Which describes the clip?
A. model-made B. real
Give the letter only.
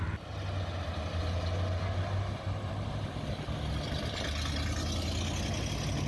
B